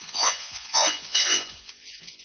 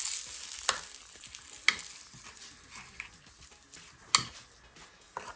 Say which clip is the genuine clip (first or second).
second